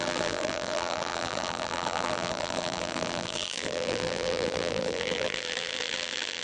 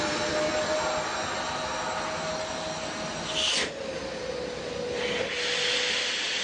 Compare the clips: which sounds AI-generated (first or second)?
first